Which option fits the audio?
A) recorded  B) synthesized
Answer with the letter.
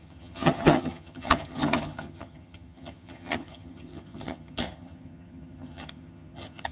B